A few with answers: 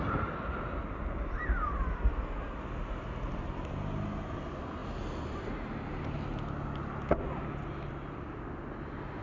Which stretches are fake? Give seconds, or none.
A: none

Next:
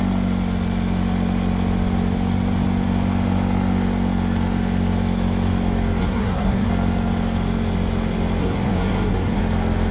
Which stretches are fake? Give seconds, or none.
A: 6.0-6.7 (codec, SNAC); 8.4-9.4

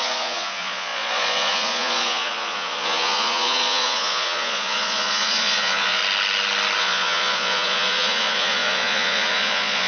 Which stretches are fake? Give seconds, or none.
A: 0.0-6.0 (vocoder, Vocos); 6.8-9.9